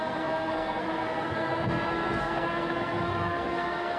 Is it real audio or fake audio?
fake